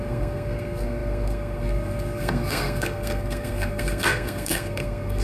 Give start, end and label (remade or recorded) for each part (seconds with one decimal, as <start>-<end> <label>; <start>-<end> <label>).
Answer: 0.0-5.2 remade